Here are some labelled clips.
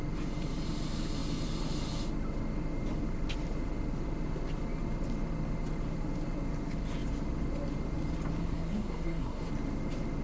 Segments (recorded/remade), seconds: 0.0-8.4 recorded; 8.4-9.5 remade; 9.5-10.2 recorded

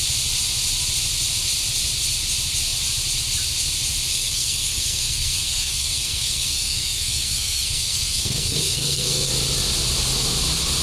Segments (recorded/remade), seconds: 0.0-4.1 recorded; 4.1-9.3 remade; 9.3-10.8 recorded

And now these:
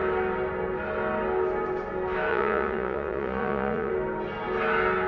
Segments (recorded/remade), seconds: 0.0-2.3 recorded; 2.3-3.9 remade; 3.9-5.1 recorded